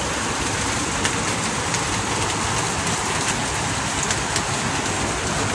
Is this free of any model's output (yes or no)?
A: yes